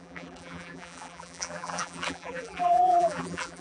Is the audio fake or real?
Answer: fake